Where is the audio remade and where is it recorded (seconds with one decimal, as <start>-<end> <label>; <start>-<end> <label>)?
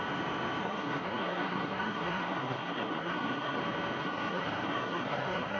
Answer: 0.0-0.6 recorded; 0.6-3.6 remade; 3.6-4.0 recorded; 4.0-5.6 remade